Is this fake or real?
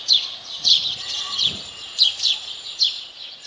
fake